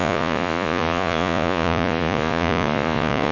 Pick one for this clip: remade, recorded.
remade